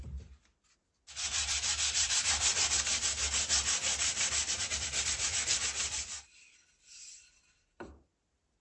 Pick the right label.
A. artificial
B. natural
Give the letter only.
B